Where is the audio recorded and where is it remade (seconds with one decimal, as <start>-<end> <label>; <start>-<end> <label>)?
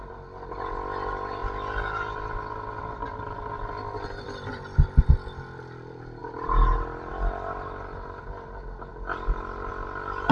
0.0-10.3 recorded